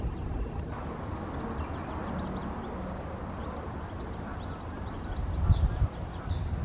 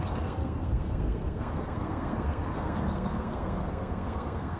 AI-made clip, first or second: second